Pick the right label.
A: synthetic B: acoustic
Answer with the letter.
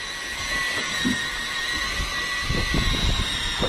B